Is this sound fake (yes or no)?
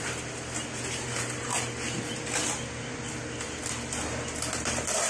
no